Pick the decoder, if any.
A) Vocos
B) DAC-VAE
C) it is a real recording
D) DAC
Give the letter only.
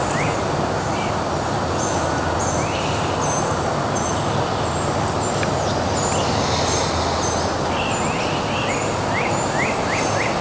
C